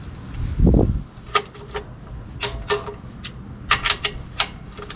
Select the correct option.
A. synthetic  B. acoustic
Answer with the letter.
B